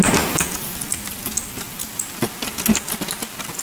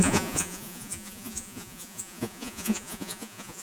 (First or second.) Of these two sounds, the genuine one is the first